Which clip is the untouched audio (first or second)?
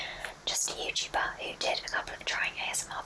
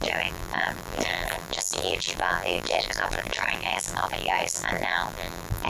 first